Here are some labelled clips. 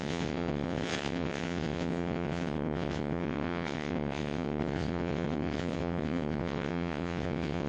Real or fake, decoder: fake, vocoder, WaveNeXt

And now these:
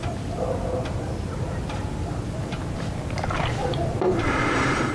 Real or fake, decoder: fake, vocoder, BigVGAN v2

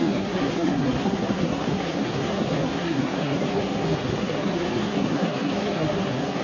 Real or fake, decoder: fake, codec, SNAC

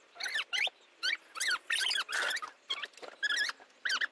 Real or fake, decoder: real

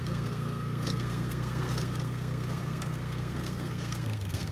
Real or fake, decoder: fake, codec, SNAC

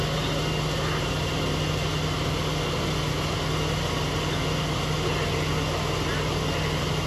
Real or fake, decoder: real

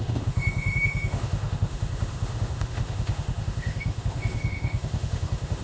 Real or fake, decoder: fake, autoencoder, DAC-VAE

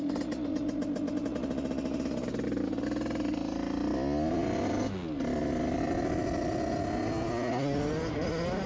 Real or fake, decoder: real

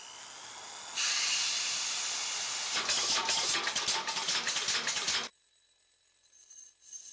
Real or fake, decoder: real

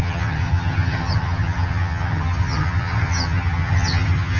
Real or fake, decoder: fake, vocoder, HiFi-GAN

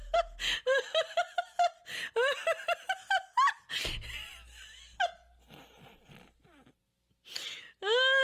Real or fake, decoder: real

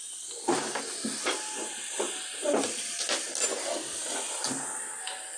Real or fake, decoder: real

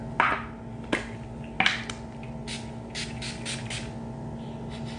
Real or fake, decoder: real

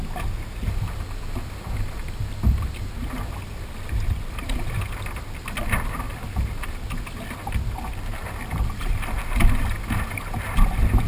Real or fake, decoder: real